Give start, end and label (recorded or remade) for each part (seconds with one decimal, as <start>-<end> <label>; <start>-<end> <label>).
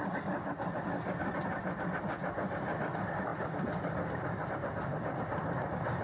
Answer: 0.0-6.0 recorded